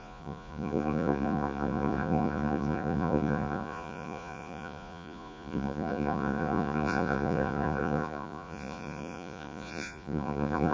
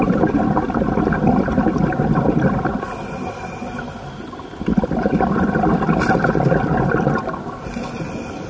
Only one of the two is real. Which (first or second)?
second